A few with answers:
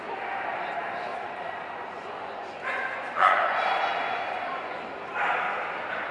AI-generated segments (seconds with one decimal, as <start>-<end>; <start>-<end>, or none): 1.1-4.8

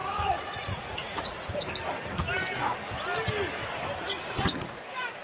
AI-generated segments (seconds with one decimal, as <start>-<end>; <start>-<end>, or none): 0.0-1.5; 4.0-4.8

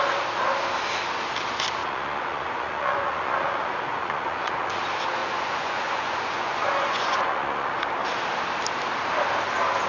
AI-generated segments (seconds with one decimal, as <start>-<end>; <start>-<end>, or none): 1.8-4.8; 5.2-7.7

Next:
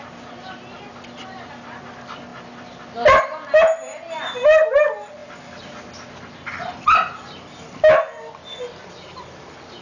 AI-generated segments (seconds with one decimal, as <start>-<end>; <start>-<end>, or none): none

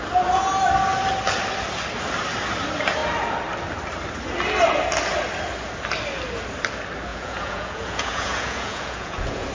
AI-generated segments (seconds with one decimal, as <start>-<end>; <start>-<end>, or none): 7.1-9.5

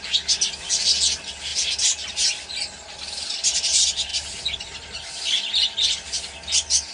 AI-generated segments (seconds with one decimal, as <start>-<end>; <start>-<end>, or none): none

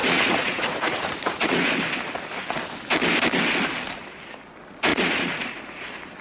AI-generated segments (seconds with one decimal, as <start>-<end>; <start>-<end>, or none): 0.0-1.7; 4.9-5.6

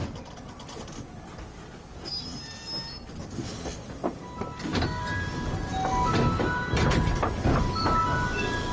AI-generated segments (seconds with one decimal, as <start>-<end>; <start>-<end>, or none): none